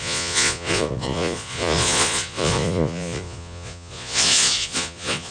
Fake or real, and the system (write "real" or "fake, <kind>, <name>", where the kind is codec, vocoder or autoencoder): fake, vocoder, Vocos